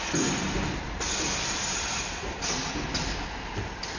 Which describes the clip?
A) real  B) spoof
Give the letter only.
A